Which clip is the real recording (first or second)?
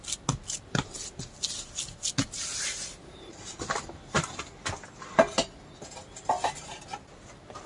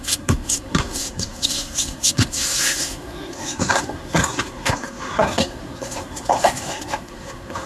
first